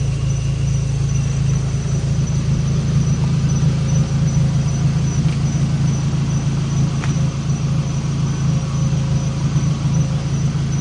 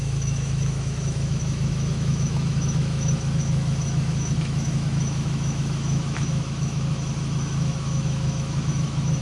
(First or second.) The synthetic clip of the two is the second